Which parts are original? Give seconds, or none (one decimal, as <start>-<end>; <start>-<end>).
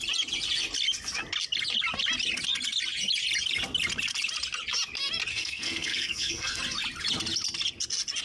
0.0-5.3; 6.6-8.2